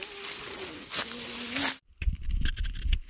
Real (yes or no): yes